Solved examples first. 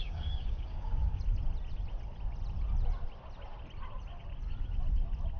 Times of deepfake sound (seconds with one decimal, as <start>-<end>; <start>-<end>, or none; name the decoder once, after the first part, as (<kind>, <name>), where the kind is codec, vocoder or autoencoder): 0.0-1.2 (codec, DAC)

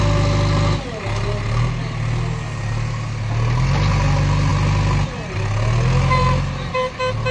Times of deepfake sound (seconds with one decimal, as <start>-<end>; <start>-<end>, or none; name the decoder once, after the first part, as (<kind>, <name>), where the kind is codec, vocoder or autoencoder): none

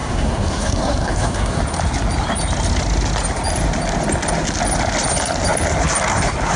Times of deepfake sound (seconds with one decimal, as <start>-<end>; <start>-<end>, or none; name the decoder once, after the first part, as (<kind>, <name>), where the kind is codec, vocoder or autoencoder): 0.0-1.6 (codec, SNAC)